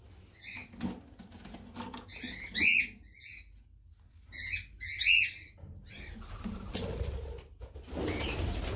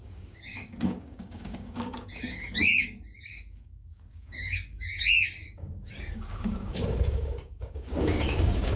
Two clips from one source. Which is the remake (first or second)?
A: second